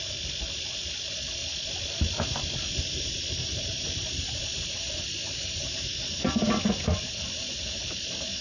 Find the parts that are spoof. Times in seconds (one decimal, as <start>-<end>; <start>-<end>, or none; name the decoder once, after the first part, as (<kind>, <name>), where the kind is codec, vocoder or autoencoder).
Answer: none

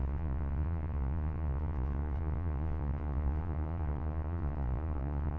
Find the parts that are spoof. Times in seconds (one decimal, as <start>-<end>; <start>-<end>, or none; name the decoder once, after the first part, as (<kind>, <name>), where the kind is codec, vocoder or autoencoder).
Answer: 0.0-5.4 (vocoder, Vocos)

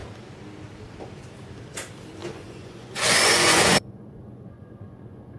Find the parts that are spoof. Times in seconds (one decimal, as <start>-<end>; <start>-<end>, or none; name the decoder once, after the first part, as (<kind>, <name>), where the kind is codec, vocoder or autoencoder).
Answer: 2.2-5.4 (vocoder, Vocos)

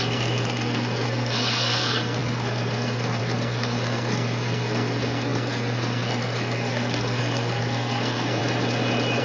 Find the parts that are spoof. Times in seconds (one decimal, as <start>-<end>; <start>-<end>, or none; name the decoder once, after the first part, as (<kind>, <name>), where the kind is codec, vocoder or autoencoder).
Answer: 0.0-8.4 (codec, SNAC)

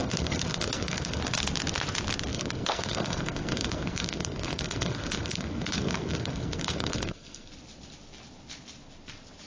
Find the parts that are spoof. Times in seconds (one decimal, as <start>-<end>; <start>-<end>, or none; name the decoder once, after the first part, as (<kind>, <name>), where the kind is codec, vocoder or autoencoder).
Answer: 0.0-1.2 (codec, SNAC); 2.3-7.5

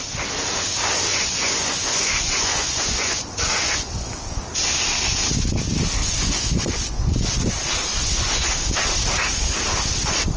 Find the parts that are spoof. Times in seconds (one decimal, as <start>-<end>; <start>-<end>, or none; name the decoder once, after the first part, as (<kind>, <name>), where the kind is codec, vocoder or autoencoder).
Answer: 1.1-4.4 (vocoder, Vocos); 6.0-7.5; 7.9-8.5